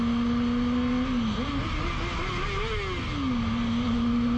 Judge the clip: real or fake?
real